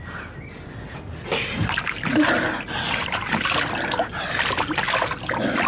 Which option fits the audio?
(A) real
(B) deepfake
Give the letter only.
A